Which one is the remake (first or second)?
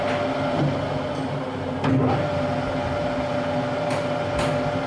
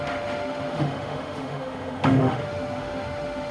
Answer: second